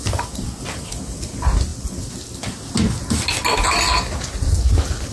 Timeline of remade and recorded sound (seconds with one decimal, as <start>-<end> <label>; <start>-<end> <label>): 0.0-5.1 recorded